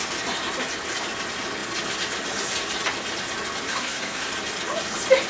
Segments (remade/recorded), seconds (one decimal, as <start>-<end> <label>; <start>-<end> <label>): 0.0-3.7 recorded; 3.7-4.3 remade; 4.3-5.3 recorded